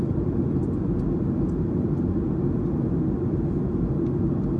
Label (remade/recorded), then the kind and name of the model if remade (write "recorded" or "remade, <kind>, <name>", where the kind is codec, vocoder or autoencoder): recorded